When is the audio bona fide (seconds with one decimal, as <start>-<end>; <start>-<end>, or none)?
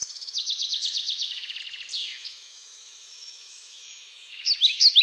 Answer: 1.6-2.0